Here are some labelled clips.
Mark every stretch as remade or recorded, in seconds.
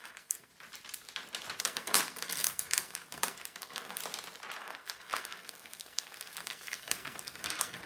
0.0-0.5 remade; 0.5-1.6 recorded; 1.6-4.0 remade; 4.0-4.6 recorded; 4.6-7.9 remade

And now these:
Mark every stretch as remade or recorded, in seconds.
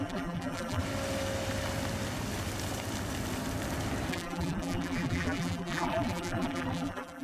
0.0-0.8 remade; 0.8-4.1 recorded; 4.1-7.2 remade